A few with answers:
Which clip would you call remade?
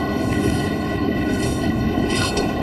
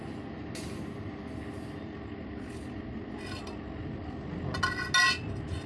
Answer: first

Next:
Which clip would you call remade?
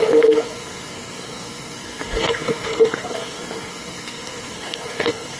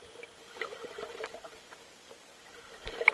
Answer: first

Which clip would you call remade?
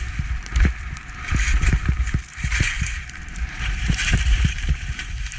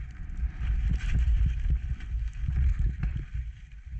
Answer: first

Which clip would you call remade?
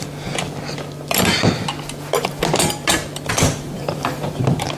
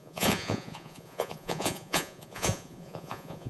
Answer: second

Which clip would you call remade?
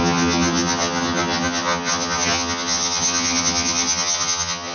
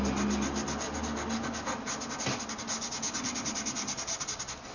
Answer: first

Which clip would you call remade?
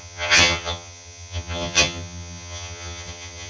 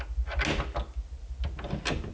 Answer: first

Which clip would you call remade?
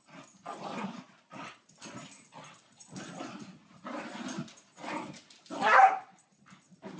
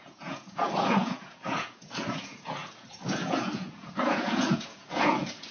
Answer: second